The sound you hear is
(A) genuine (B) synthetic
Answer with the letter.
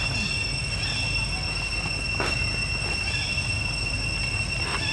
A